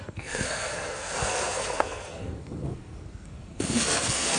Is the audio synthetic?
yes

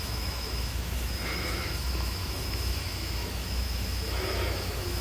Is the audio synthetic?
yes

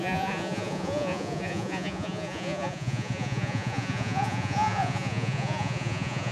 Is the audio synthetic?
yes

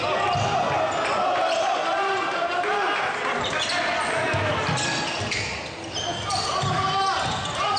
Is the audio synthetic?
no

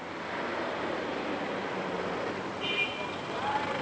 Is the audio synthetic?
no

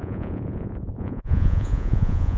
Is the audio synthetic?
yes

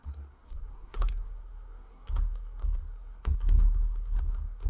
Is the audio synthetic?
yes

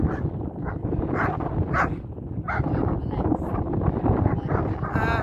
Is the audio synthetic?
no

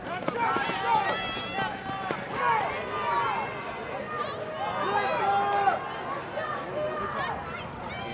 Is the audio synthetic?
no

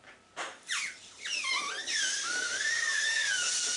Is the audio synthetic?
no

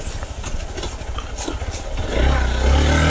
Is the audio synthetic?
no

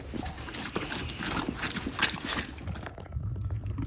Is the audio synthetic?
no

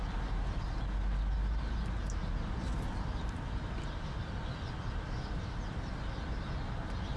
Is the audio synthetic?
no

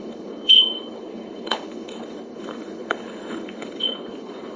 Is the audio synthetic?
yes